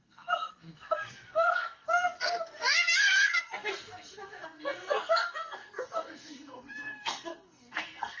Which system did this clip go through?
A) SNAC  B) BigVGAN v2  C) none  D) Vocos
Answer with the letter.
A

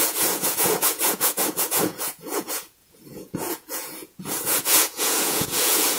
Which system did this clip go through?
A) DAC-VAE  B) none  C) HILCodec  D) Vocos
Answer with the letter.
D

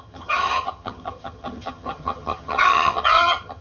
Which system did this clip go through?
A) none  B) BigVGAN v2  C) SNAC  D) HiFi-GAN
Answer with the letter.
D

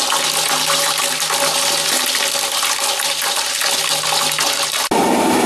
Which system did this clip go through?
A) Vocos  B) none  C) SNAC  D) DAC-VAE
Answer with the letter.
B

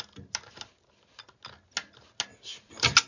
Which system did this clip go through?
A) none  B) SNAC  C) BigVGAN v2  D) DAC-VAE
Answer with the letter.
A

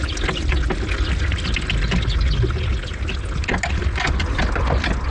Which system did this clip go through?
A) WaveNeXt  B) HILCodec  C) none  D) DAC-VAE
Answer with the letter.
C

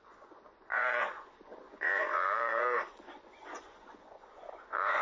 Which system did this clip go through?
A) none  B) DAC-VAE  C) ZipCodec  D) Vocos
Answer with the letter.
D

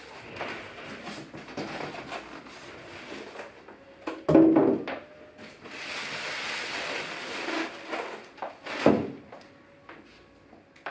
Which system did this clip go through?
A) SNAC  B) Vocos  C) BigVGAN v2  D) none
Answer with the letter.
D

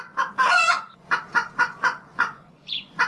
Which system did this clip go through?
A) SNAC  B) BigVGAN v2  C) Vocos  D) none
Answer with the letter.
C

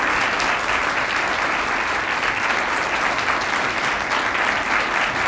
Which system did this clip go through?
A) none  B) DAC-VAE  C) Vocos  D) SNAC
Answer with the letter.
A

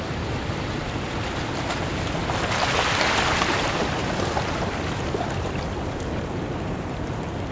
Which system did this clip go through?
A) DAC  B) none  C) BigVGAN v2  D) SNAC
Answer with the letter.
B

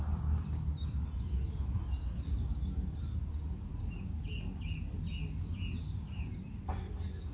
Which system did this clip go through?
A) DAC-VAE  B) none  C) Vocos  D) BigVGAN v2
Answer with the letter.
B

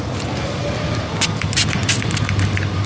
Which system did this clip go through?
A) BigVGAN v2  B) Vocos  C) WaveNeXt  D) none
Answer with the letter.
D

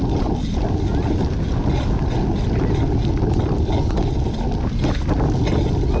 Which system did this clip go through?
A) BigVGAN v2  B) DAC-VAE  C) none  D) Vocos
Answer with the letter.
C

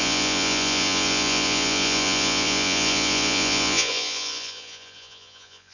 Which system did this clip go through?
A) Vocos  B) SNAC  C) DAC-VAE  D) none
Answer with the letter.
A